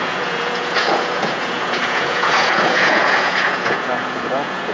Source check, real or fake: fake